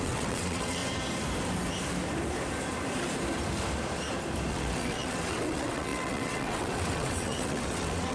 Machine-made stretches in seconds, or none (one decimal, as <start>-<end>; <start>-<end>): 0.0-0.8; 4.5-8.1